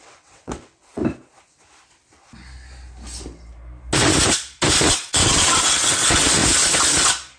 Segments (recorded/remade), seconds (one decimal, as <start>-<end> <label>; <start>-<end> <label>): 0.0-1.0 remade; 1.0-4.9 recorded; 4.9-6.4 remade; 6.4-7.4 recorded